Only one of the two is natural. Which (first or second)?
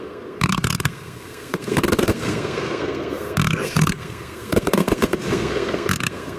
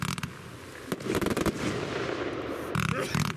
second